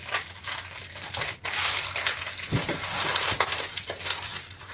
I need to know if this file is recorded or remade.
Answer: recorded